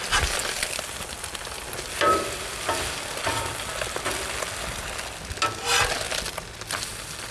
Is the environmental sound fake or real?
real